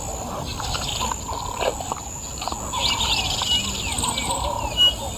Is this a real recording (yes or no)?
yes